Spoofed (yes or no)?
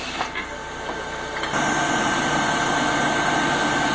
no